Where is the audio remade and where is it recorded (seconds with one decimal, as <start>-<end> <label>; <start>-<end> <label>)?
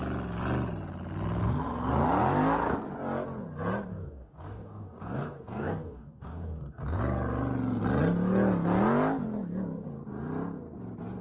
0.0-3.9 recorded; 3.9-7.0 remade; 7.0-11.2 recorded